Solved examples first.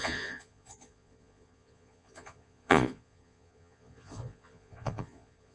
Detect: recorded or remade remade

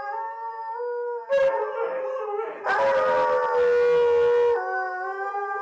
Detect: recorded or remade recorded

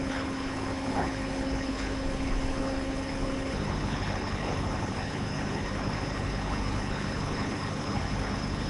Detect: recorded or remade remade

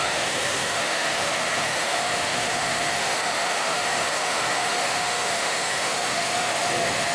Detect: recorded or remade remade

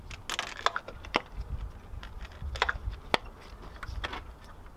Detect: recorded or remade recorded